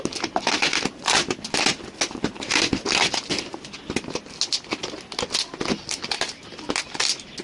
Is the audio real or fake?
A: real